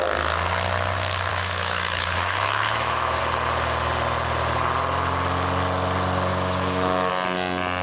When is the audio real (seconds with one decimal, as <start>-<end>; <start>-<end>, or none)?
0.0-1.3; 3.2-6.3; 7.1-7.8

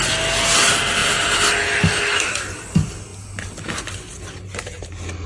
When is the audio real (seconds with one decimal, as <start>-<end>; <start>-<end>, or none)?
0.0-5.3